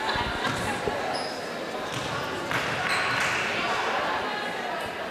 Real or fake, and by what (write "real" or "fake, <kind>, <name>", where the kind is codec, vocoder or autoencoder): real